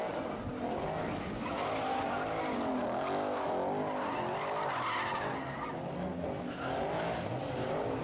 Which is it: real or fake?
real